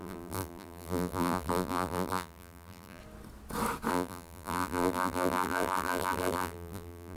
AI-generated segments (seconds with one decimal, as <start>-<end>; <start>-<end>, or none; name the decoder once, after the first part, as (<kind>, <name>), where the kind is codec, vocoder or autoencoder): 0.0-3.0 (vocoder, BigVGAN v2); 3.9-7.2